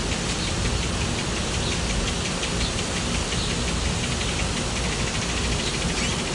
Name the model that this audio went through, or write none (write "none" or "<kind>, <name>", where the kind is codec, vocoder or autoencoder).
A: none